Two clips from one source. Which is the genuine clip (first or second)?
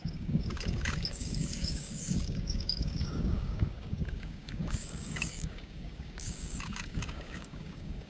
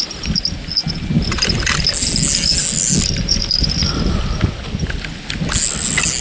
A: second